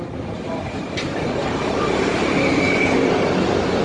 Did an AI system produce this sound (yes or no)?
no